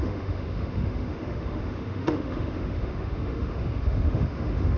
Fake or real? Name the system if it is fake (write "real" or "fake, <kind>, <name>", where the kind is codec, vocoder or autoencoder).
fake, autoencoder, DAC-VAE